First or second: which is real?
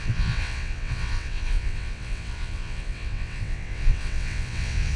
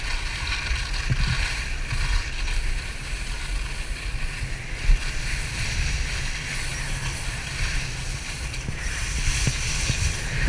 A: second